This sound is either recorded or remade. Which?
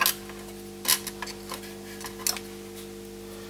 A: recorded